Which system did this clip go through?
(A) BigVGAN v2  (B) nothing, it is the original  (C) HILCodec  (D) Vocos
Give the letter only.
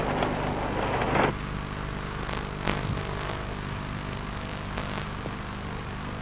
B